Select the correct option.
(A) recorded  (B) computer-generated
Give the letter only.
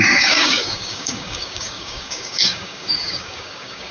B